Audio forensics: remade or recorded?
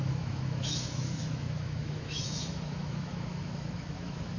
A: remade